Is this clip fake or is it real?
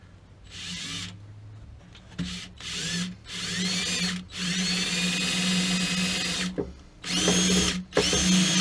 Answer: real